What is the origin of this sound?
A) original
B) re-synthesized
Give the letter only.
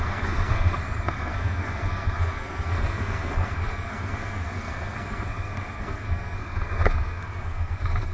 B